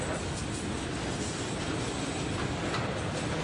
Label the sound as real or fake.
real